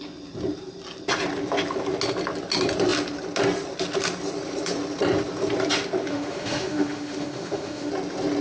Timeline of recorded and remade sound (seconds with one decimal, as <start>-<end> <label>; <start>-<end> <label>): 0.0-6.1 recorded; 6.1-7.9 remade; 7.9-8.4 recorded